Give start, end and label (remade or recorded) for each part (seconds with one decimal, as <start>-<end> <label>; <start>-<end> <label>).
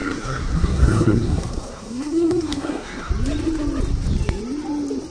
0.0-3.1 remade; 3.1-5.1 recorded